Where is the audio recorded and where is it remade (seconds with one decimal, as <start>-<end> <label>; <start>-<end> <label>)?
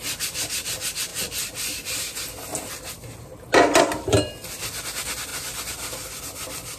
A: 0.0-6.8 recorded